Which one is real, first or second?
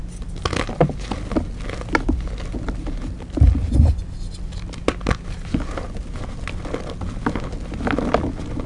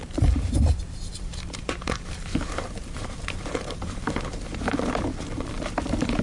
first